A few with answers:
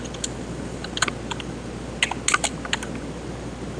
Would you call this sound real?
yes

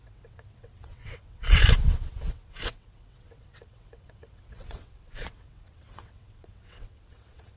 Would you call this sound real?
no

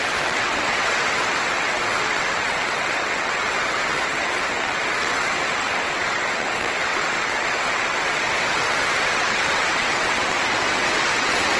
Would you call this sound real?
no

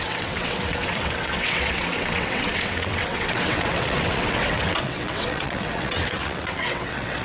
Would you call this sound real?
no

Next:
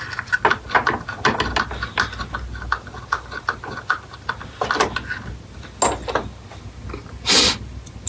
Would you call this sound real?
yes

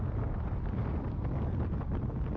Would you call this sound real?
yes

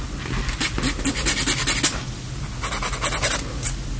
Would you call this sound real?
yes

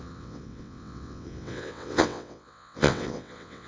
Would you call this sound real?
no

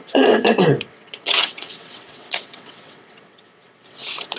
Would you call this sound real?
no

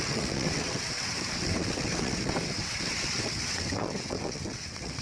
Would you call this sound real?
no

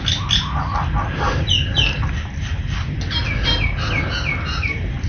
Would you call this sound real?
yes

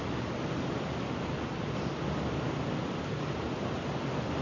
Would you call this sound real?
yes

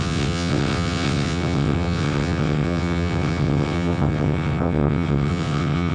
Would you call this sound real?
no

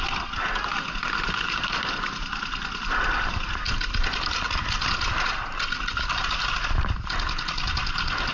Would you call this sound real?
yes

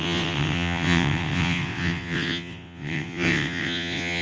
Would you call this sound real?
no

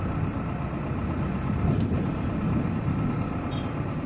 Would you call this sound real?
yes